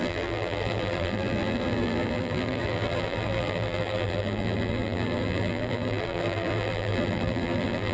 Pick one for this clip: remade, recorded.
remade